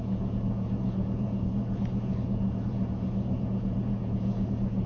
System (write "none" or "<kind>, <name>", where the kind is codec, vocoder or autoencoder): vocoder, Vocos